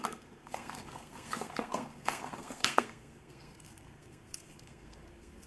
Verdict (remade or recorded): remade